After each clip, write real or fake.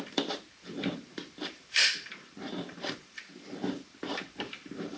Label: fake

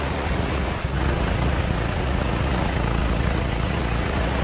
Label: fake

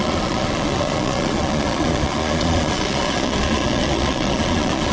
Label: fake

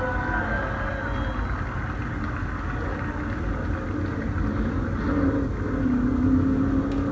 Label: real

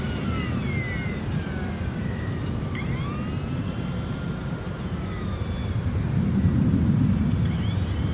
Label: fake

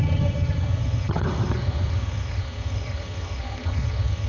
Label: fake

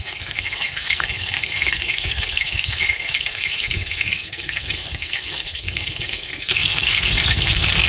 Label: fake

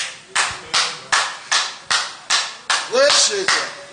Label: real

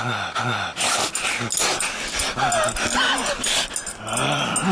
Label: real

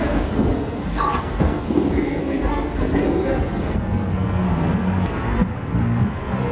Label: fake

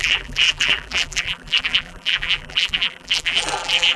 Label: fake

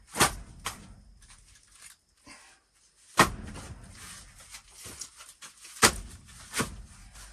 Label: real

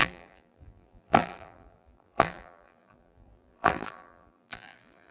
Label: fake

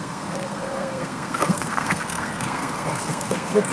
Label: fake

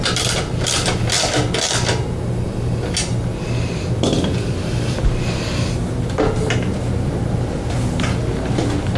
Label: real